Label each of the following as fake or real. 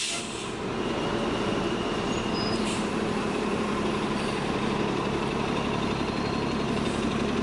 fake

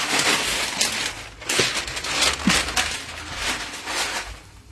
real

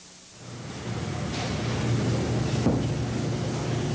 real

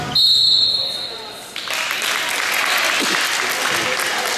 real